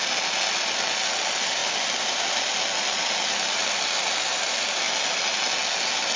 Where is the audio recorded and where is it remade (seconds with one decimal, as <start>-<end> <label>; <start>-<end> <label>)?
0.0-1.6 recorded; 1.6-5.3 remade; 5.3-6.2 recorded